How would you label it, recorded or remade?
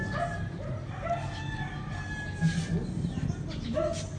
recorded